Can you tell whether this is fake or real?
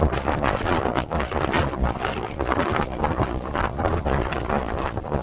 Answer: fake